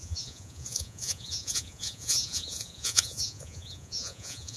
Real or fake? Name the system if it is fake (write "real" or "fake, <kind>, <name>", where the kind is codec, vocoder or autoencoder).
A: fake, vocoder, Vocos